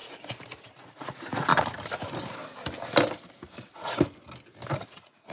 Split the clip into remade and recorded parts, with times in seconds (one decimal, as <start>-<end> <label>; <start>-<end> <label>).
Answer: 0.0-0.6 recorded; 0.6-1.5 remade; 1.5-4.7 recorded; 4.7-5.3 remade